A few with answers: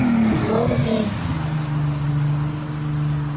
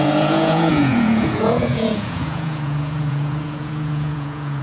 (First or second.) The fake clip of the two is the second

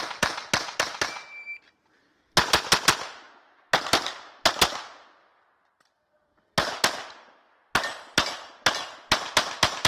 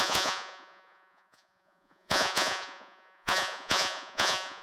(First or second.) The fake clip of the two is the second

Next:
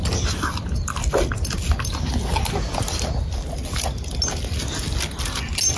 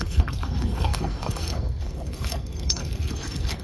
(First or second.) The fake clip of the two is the second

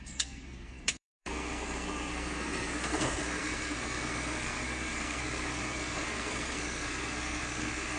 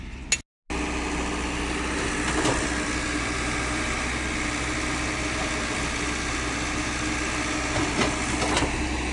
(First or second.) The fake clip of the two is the first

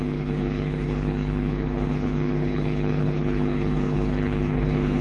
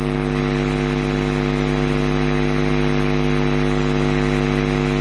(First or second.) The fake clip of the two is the first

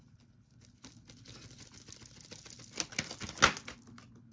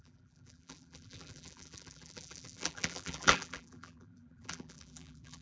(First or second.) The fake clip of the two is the second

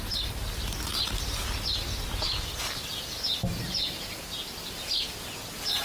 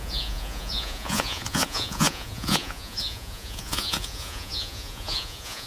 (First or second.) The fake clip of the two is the second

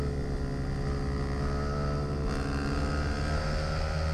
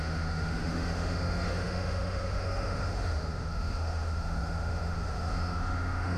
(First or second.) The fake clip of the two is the second